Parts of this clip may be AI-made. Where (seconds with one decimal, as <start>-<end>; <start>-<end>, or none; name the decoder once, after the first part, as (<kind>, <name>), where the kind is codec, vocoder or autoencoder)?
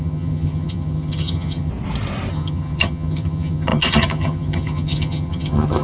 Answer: 0.0-1.7 (vocoder, HiFi-GAN); 2.3-5.8